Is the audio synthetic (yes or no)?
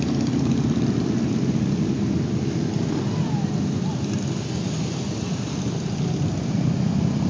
no